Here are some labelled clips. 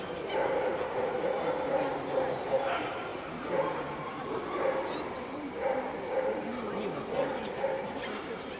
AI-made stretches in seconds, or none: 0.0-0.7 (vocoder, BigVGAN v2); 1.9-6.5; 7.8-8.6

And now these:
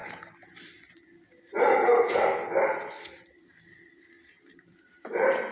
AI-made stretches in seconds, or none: 3.3-5.5 (vocoder, BigVGAN v2)

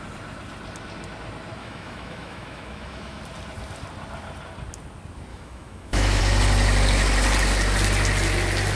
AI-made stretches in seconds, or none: 1.6-3.2 (autoencoder, DAC-VAE); 5.3-6.2

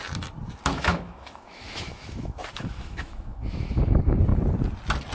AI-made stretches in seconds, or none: 0.7-3.8 (autoencoder, DAC-VAE)

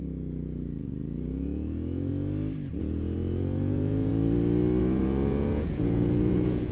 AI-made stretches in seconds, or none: 0.0-2.1 (vocoder, Vocos); 2.8-4.1; 4.8-6.7

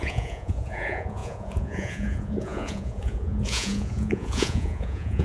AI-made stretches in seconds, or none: 0.0-5.2 (vocoder, Vocos)

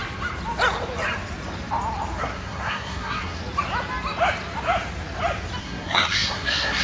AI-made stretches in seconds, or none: 2.2-3.4 (codec, SNAC); 5.6-6.8

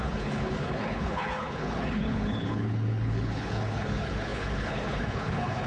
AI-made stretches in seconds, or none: 0.0-5.7 (codec, HILCodec)